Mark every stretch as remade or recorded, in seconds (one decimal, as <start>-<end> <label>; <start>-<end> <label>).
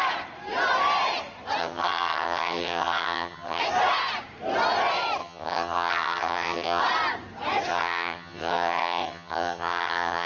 0.0-1.6 recorded; 1.6-3.6 remade; 3.6-5.2 recorded; 5.2-6.8 remade; 6.8-7.7 recorded; 7.7-10.3 remade